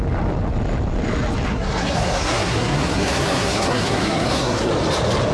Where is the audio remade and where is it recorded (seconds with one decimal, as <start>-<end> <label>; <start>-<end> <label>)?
0.0-1.5 recorded; 1.5-4.7 remade; 4.7-5.3 recorded